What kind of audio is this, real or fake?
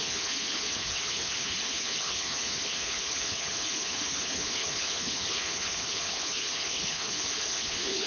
fake